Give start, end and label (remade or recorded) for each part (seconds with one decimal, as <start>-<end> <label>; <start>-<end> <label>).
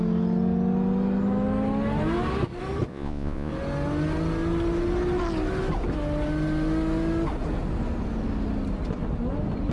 0.0-2.9 recorded; 2.9-3.5 remade; 3.5-9.7 recorded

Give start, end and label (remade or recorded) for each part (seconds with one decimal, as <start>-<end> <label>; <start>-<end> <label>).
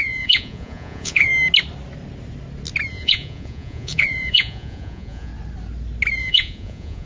0.0-1.3 remade; 1.3-2.9 recorded; 2.9-5.3 remade; 5.3-6.2 recorded; 6.2-7.1 remade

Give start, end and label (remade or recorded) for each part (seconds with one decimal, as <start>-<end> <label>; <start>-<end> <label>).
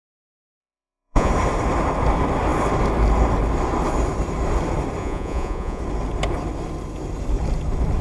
0.0-0.6 recorded; 0.6-1.3 remade; 1.3-5.0 recorded; 5.0-5.8 remade; 5.8-8.0 recorded